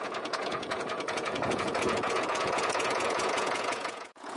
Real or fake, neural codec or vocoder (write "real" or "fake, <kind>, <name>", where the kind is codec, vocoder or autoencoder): fake, vocoder, Vocos